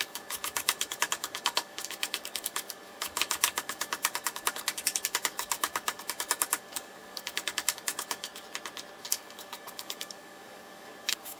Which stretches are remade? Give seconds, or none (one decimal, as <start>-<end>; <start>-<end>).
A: 0.0-8.3; 9.0-11.4